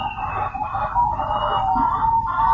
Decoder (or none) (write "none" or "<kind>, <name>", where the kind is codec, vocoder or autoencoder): none